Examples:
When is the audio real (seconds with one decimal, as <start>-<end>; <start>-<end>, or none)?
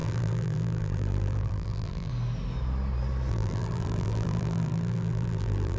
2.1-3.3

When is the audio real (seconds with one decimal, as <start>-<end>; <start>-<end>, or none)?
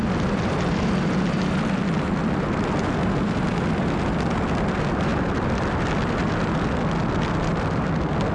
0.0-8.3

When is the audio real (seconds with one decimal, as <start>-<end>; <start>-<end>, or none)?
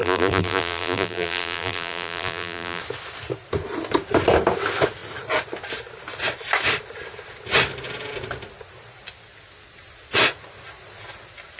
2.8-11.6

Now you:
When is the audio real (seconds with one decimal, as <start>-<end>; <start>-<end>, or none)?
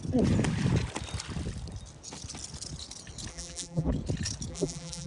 0.0-3.3; 3.9-4.5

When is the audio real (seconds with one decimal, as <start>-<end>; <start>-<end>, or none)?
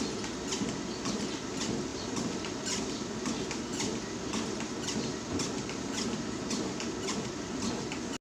0.0-1.9; 3.3-3.7; 7.7-8.2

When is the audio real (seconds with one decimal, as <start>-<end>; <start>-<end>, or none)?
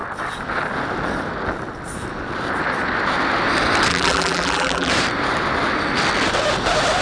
0.0-3.9; 4.9-7.0